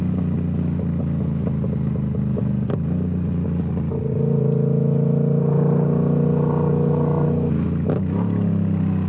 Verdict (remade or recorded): recorded